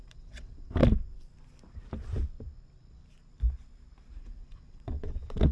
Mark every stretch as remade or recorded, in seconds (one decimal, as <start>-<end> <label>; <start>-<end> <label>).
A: 0.0-0.8 remade; 0.8-4.1 recorded; 4.1-5.5 remade